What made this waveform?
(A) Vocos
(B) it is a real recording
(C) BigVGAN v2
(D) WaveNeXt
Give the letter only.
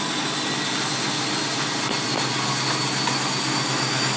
B